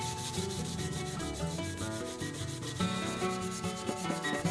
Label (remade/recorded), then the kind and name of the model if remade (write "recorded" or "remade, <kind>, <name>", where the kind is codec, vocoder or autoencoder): remade, vocoder, BigVGAN v2